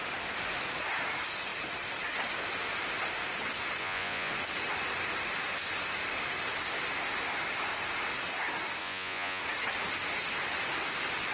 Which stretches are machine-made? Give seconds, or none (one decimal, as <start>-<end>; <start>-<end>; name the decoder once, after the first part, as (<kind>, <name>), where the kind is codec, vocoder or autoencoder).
3.8-4.3 (vocoder, Vocos); 8.8-9.4